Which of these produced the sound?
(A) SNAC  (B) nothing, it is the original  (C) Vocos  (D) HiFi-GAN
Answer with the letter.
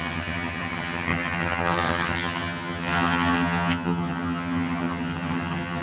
D